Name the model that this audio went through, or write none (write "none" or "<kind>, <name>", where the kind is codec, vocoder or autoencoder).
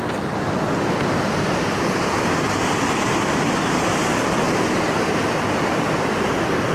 none